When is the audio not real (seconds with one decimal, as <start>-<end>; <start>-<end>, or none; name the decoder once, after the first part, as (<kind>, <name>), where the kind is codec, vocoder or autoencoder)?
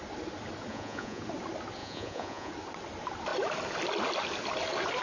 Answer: 0.7-1.2 (vocoder, Vocos); 1.8-2.5